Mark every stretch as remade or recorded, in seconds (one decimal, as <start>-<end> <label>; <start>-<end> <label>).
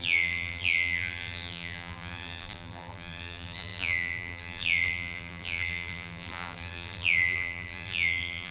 0.0-8.5 remade